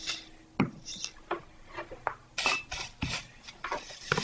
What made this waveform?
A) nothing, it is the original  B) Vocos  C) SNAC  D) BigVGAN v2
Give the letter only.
A